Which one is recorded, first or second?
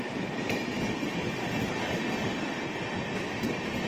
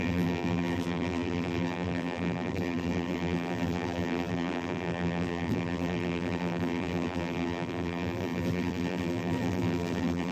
first